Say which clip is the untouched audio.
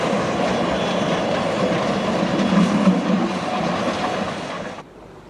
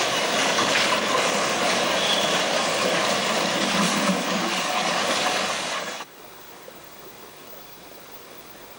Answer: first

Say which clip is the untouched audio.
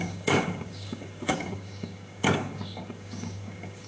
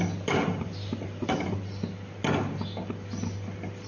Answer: second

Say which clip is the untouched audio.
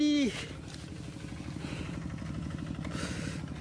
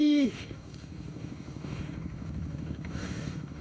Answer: first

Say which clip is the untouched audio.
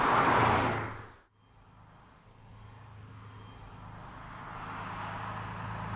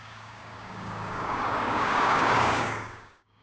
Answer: first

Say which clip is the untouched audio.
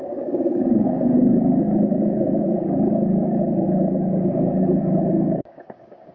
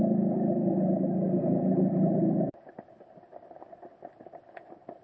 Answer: second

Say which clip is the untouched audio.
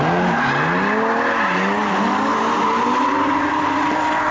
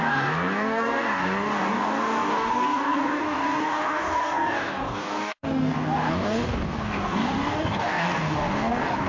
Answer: first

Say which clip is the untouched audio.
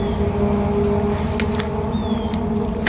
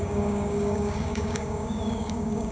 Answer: first